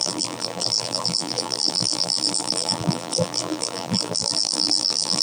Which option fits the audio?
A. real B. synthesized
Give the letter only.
B